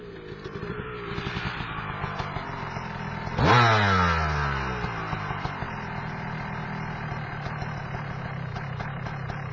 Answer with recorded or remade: recorded